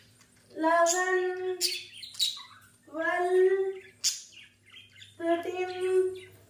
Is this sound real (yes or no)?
yes